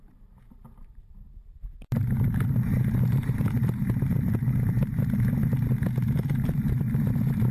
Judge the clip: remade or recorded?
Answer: remade